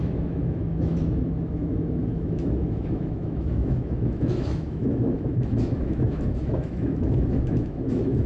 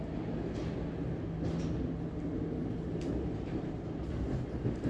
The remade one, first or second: first